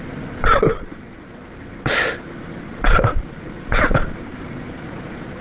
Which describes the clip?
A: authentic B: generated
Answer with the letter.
A